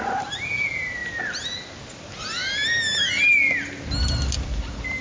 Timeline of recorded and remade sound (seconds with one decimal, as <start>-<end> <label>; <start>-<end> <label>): 0.0-1.0 remade; 1.0-4.0 recorded; 4.0-5.0 remade